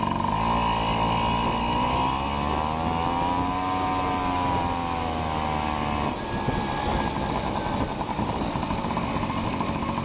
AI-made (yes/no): no